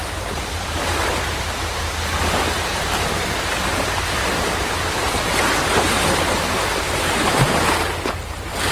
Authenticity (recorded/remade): recorded